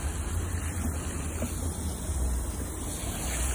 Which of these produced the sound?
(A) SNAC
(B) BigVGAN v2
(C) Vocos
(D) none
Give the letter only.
D